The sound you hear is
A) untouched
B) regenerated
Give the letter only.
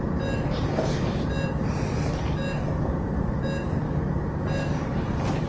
A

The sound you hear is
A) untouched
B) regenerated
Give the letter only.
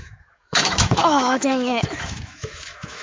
B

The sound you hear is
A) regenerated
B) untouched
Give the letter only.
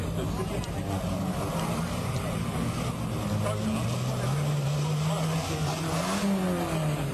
B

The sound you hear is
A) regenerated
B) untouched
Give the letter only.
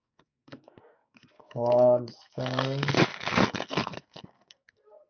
A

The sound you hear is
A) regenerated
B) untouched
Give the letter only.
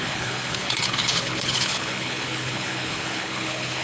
A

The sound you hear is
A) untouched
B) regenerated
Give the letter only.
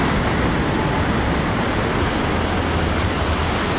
A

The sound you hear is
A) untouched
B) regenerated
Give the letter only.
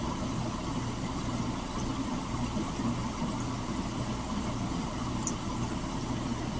A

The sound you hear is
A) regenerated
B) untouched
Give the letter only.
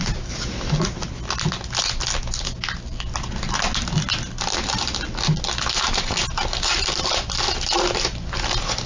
B